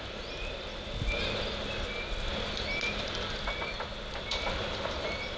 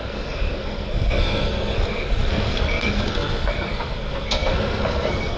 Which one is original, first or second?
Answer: first